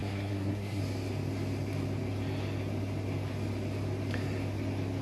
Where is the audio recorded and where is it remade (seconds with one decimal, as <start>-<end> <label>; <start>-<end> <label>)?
0.0-0.8 remade; 0.8-5.0 recorded